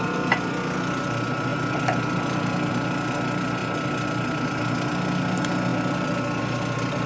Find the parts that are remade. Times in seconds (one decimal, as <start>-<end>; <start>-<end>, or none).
1.5-2.7